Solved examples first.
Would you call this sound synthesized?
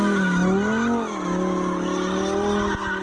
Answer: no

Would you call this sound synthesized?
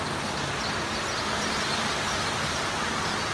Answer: no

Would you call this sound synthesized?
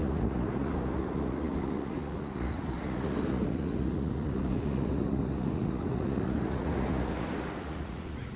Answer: yes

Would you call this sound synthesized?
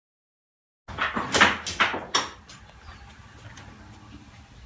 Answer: no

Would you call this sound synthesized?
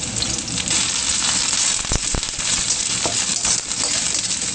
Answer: no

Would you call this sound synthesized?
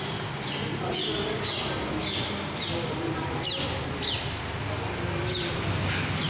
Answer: no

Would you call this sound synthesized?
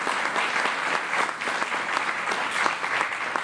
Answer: no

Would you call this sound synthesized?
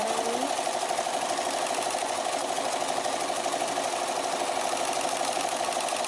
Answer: no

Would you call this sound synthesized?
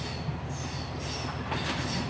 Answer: no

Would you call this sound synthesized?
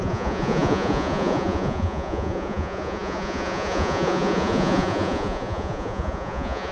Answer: yes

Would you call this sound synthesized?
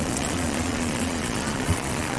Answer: yes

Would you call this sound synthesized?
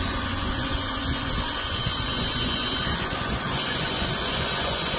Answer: yes